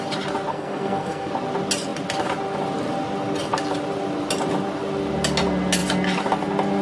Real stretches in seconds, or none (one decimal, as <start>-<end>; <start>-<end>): 0.0-0.5; 1.3-6.8

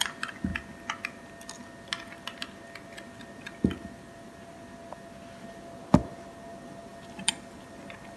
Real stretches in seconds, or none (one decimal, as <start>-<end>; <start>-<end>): 0.0-6.9

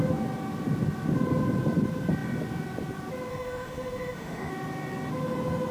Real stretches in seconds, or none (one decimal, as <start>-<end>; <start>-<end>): 0.0-3.3; 4.5-5.7

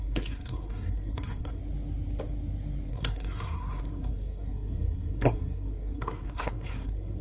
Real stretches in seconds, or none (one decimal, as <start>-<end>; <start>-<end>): 1.6-2.9